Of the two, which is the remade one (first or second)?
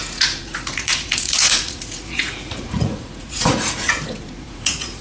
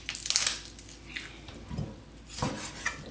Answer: first